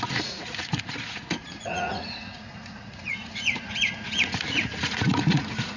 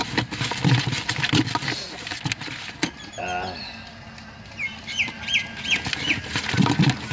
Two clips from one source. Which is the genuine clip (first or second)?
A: second